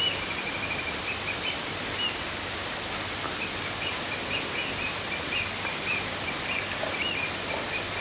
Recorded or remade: recorded